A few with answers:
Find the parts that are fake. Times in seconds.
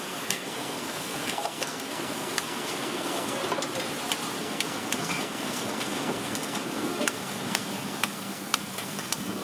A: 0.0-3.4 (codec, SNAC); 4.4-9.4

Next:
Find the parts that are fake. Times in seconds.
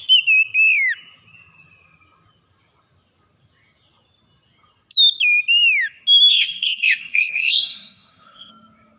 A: 6.3-8.5 (codec, SNAC)